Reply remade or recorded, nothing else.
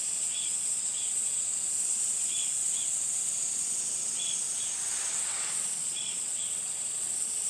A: remade